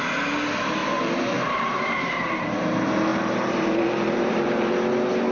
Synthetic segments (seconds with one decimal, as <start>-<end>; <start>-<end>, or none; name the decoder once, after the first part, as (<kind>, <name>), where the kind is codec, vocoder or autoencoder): 0.8-2.5 (vocoder, BigVGAN v2); 3.1-4.7